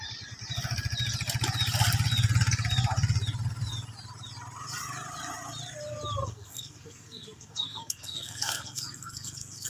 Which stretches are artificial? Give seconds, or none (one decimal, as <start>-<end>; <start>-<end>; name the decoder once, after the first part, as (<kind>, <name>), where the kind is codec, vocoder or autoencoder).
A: 6.2-9.7 (codec, SNAC)